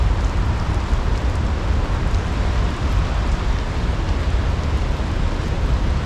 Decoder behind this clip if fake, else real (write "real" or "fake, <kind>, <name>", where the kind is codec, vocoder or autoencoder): real